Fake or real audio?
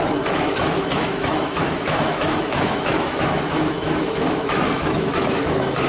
fake